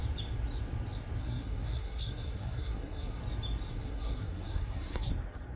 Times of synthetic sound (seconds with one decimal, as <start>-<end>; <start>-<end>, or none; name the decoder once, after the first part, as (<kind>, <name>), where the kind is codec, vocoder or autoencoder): 1.2-3.2 (codec, SNAC); 3.7-5.1